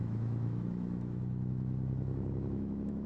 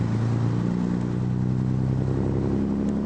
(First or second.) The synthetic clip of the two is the first